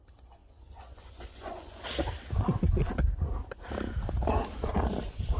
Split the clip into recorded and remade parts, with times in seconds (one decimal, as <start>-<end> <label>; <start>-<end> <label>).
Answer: 0.0-0.4 recorded; 0.4-1.8 remade; 1.8-5.4 recorded